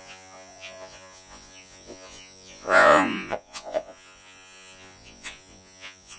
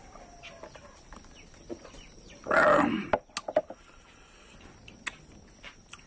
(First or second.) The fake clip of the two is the first